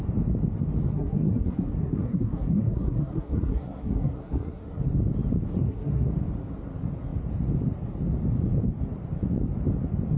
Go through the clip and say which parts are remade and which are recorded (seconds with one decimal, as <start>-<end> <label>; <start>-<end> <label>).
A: 0.0-0.9 recorded; 0.9-4.8 remade; 4.8-5.5 recorded; 5.5-6.1 remade; 6.1-10.2 recorded